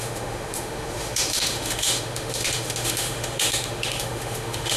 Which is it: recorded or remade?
remade